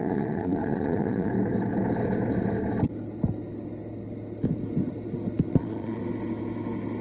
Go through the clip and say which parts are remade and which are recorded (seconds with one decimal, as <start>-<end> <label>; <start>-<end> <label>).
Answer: 0.0-1.3 remade; 1.3-5.5 recorded; 5.5-6.0 remade; 6.0-7.0 recorded